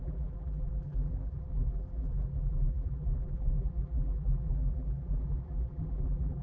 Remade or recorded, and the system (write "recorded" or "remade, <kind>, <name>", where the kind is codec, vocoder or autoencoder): remade, vocoder, BigVGAN v2